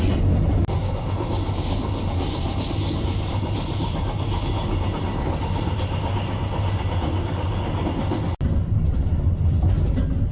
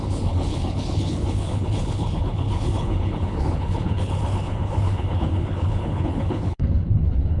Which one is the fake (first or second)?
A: second